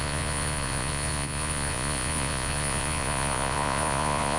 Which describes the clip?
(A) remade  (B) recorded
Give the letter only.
A